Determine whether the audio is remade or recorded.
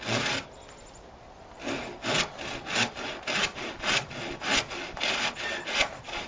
recorded